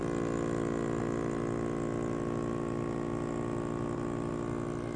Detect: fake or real real